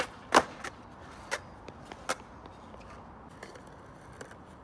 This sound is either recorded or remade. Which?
recorded